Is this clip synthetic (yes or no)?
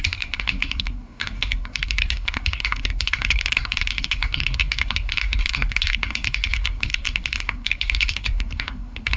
yes